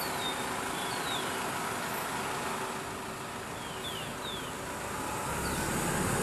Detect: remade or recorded recorded